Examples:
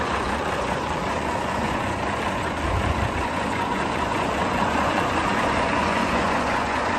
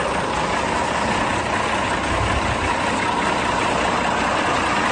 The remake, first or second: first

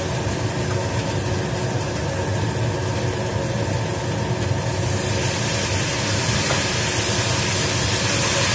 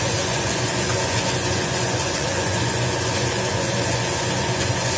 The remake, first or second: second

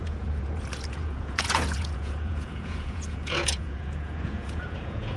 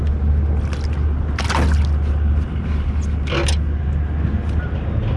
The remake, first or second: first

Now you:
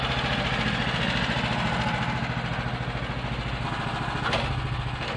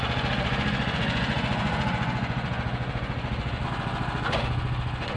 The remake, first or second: second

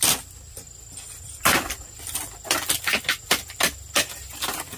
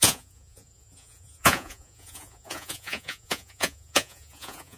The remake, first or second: second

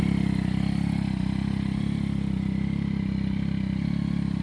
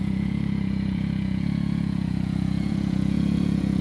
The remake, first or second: second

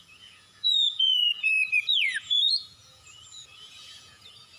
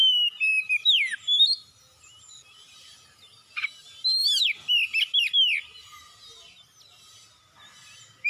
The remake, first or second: first